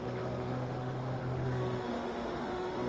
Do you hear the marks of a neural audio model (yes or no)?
yes